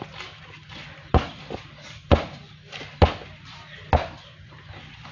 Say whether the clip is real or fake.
real